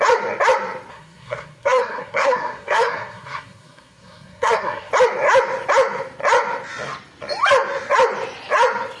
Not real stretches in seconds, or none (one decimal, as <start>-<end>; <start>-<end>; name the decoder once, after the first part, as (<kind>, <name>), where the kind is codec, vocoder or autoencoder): 0.9-4.9 (codec, SNAC)